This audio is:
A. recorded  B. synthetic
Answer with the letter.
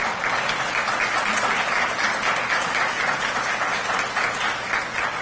A